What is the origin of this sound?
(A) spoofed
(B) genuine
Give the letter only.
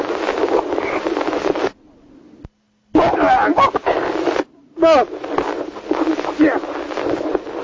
B